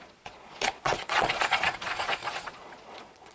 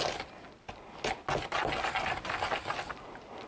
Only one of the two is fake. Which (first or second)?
first